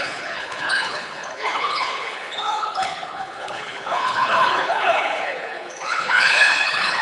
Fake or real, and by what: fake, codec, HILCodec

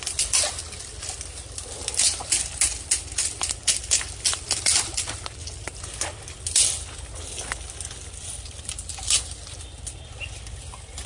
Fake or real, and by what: real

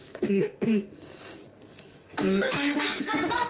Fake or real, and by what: fake, codec, SNAC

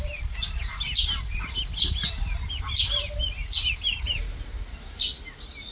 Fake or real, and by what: real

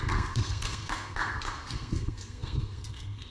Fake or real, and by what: fake, codec, SNAC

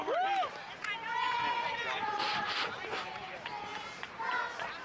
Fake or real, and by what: real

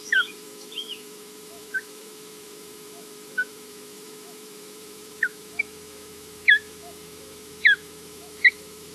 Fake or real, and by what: fake, autoencoder, DAC-VAE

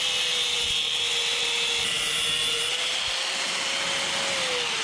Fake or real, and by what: real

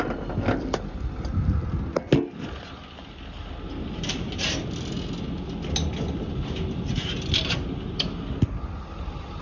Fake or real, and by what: real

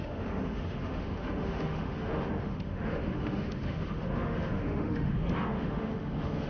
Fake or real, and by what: fake, autoencoder, DAC-VAE